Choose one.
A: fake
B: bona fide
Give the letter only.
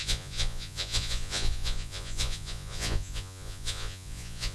A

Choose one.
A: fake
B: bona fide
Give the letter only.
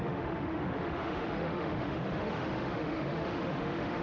A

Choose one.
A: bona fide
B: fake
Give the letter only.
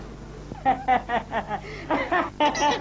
A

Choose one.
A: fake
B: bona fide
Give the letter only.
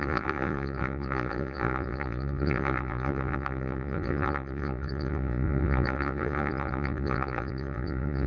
A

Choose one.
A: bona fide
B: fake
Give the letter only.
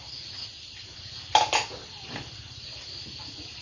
A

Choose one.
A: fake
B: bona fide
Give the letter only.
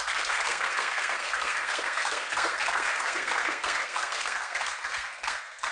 A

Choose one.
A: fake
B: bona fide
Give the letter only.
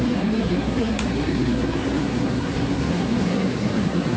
A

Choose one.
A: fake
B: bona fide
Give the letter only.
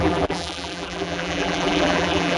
A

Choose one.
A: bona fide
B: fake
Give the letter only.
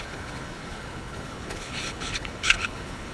B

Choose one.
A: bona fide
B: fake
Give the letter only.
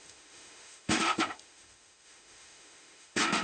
B